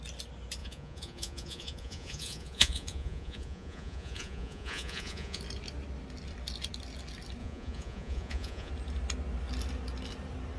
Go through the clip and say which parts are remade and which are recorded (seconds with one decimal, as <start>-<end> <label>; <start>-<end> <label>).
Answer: 0.0-0.6 recorded; 0.6-5.4 remade; 5.4-7.4 recorded; 7.4-8.7 remade; 8.7-10.6 recorded